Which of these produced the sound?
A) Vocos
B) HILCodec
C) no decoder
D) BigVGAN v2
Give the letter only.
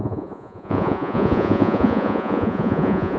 A